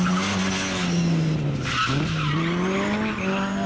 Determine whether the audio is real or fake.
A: real